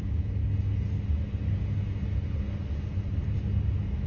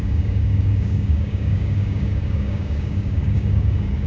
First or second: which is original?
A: first